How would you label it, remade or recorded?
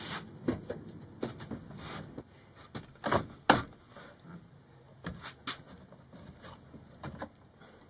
recorded